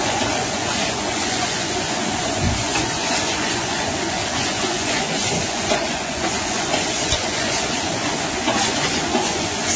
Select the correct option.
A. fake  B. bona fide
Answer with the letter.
A